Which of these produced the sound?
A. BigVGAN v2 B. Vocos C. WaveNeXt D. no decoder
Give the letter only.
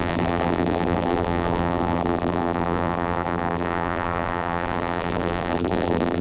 A